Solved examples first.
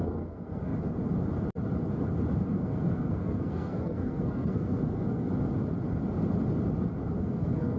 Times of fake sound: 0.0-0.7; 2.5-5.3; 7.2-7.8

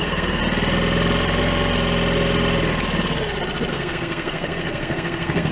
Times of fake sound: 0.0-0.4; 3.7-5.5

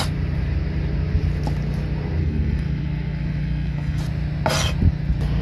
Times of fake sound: 2.2-4.0

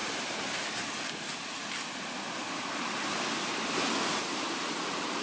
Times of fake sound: none

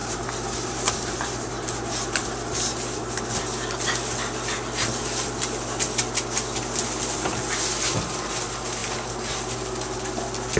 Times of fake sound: 0.0-3.3

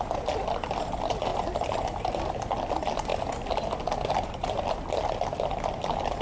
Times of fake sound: none

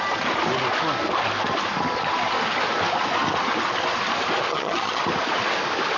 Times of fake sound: 4.5-5.0

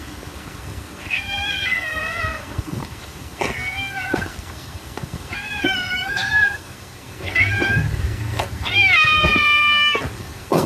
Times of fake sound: 0.0-10.7